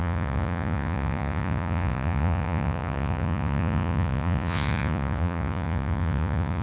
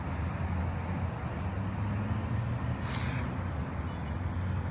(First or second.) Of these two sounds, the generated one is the first